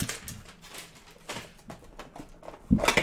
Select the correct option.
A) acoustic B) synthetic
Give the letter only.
A